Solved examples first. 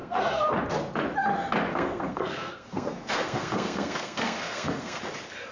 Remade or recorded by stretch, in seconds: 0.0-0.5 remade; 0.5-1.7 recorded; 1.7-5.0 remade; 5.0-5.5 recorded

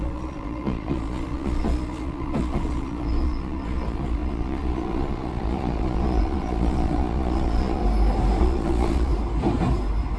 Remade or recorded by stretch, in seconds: 0.0-7.8 remade; 7.8-8.4 recorded; 8.4-9.1 remade; 9.1-10.2 recorded

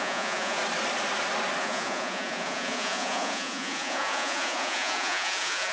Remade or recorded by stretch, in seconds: 0.0-0.6 remade; 0.6-1.6 recorded; 1.6-5.7 remade

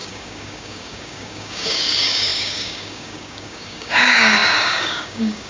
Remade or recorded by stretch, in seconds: 0.0-5.5 remade

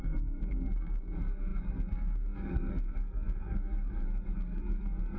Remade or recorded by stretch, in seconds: 0.0-5.2 remade

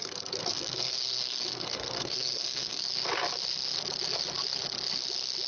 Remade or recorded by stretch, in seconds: 0.0-2.9 remade; 2.9-5.5 recorded

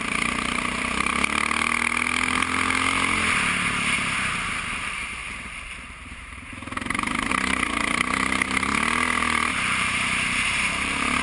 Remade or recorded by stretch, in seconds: 0.0-1.1 remade; 1.1-4.7 recorded; 4.7-8.7 remade; 8.7-9.5 recorded; 9.5-11.2 remade